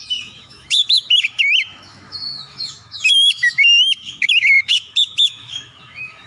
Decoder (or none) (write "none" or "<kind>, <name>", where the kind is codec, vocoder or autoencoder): autoencoder, DAC-VAE